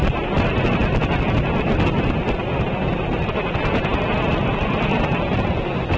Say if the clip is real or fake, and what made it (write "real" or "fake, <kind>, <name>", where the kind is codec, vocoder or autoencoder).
real